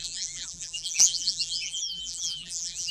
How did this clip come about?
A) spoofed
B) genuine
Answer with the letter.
A